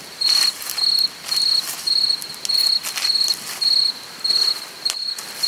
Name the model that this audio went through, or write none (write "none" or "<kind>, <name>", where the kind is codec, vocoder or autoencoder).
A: none